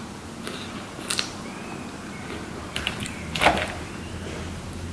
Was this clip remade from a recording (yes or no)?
no